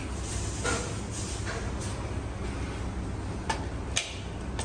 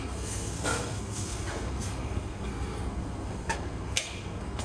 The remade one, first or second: second